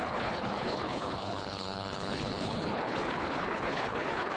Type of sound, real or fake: fake